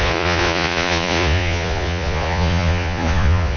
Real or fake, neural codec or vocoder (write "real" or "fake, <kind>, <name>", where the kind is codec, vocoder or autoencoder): fake, vocoder, Vocos